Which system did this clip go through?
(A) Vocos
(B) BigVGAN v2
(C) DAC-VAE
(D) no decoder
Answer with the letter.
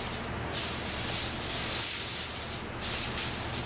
D